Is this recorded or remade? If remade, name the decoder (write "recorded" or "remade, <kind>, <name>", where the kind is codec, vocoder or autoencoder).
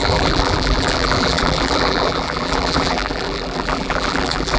remade, vocoder, BigVGAN v2